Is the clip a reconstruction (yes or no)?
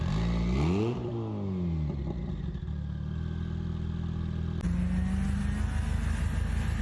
no